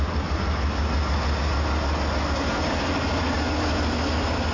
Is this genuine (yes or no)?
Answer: yes